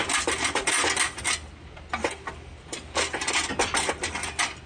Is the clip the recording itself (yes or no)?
yes